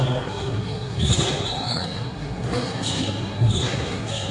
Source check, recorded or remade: remade